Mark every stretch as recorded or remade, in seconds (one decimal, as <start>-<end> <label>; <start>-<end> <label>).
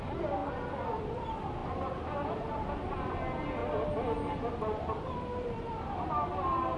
0.0-6.8 recorded